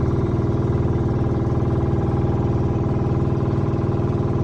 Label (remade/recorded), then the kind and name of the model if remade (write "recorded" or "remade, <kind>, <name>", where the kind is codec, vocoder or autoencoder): remade, vocoder, BigVGAN v2